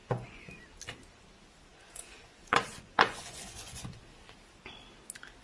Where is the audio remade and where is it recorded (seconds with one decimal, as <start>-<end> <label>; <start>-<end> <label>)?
0.0-0.6 remade; 0.6-1.7 recorded; 1.7-4.0 remade; 4.0-5.4 recorded